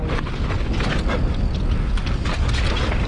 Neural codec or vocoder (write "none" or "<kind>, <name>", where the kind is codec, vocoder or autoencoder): none